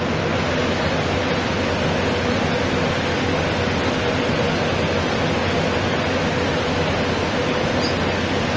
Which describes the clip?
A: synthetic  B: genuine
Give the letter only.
B